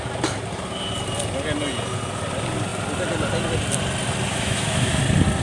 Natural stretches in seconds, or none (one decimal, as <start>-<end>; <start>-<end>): 0.0-4.3; 5.0-5.4